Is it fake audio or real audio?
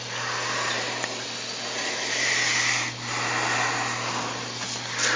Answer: real